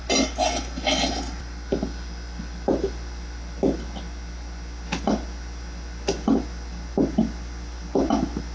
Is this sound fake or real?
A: real